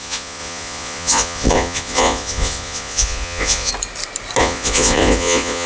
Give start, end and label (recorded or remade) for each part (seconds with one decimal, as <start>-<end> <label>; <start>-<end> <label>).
0.0-3.7 remade; 3.7-4.4 recorded; 4.4-5.7 remade